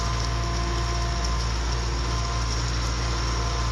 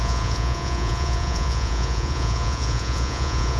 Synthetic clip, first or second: second